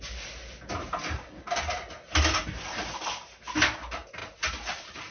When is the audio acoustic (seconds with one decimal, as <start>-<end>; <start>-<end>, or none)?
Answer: 0.0-5.1